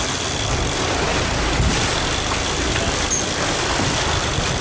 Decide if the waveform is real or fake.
fake